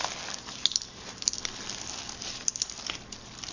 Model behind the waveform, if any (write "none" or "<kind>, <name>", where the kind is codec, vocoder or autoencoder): none